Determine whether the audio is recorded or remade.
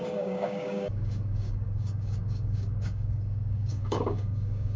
remade